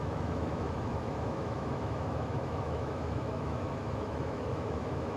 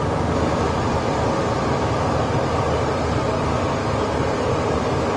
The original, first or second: second